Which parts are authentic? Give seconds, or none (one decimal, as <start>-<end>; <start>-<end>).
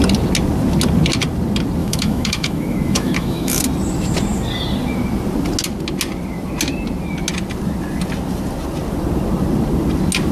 0.0-1.8; 3.6-10.3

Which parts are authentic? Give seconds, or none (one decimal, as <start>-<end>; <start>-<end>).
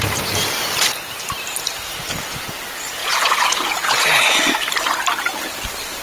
0.0-3.0; 4.4-6.0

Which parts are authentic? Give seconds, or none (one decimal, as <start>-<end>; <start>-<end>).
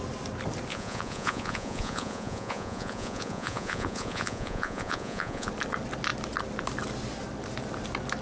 0.0-0.7; 5.5-8.2